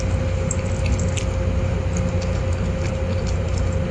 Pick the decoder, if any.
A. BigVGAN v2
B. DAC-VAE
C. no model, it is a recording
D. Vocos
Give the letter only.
C